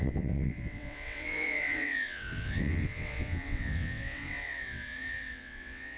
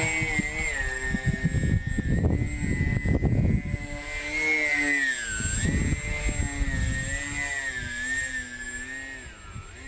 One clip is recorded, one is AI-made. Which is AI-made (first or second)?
first